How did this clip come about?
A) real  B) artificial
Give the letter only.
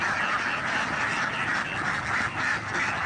A